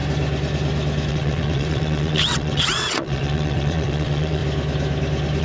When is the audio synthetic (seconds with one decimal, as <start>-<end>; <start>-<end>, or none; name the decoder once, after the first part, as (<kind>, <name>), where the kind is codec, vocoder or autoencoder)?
1.1-4.4 (vocoder, WaveNeXt)